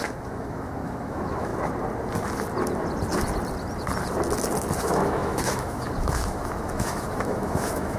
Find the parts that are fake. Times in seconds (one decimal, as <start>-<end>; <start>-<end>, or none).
0.0-1.5; 4.8-8.0